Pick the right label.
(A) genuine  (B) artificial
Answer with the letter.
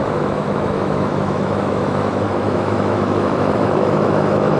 B